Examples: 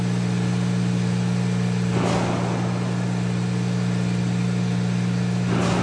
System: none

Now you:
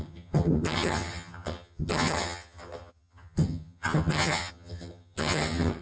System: vocoder, HiFi-GAN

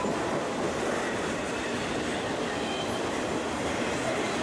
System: vocoder, BigVGAN v2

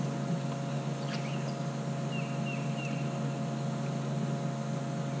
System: none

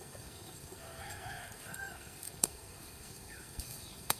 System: codec, SNAC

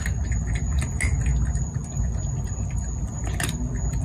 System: none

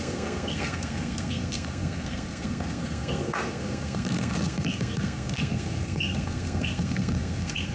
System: codec, SNAC